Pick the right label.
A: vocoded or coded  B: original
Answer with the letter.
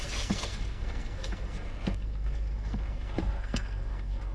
A